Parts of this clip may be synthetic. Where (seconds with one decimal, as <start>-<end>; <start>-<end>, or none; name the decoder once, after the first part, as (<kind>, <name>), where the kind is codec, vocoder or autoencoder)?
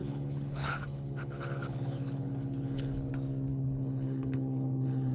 0.0-3.1 (codec, HILCodec); 3.5-5.1